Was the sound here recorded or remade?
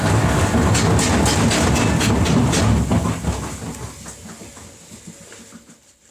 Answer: recorded